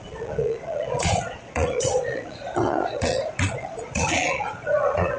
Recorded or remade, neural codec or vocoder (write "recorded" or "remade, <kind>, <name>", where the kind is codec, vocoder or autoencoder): remade, vocoder, Vocos